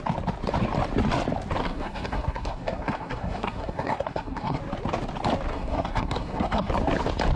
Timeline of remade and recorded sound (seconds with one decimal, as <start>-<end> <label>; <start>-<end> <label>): 0.0-1.6 recorded; 1.6-4.6 remade; 4.6-5.5 recorded; 5.5-6.7 remade; 6.7-7.4 recorded